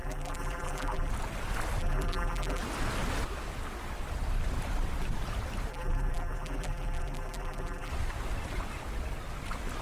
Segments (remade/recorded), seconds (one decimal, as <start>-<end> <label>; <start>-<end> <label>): 0.0-1.1 remade; 1.1-1.8 recorded; 1.8-2.6 remade; 2.6-5.7 recorded; 5.7-7.9 remade; 7.9-9.8 recorded

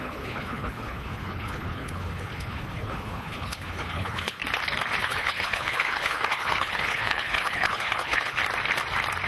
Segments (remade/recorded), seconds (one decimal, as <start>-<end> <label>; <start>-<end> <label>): 0.0-4.4 remade; 4.4-5.0 recorded; 5.0-8.4 remade; 8.4-9.3 recorded

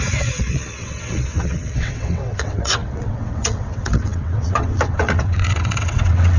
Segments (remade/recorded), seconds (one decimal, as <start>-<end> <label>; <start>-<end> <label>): 0.0-6.4 remade

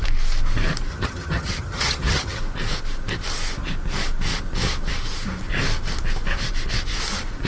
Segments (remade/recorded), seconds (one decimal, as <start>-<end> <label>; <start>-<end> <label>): 0.0-0.9 recorded; 0.9-2.4 remade; 2.4-7.5 recorded

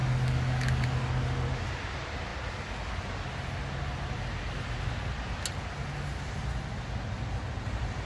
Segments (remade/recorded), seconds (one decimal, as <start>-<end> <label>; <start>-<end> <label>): 0.0-1.1 remade; 1.1-8.1 recorded

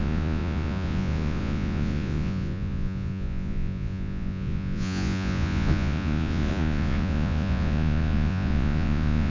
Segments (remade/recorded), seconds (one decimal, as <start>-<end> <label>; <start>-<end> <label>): 0.0-9.3 remade

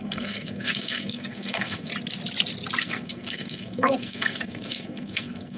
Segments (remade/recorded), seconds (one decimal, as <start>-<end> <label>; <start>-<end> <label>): 0.0-1.9 remade; 1.9-2.8 recorded; 2.8-5.6 remade